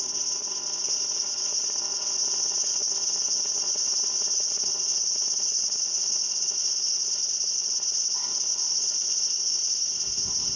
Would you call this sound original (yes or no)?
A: no